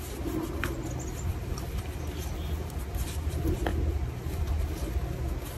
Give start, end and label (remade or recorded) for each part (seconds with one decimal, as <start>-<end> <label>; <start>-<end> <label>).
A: 0.0-1.3 recorded; 1.3-2.2 remade; 2.2-3.7 recorded; 3.7-4.5 remade; 4.5-5.6 recorded